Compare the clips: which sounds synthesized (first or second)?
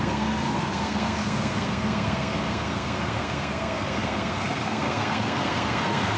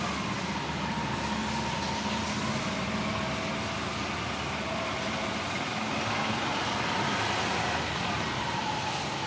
first